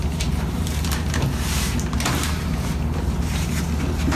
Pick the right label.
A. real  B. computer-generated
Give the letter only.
B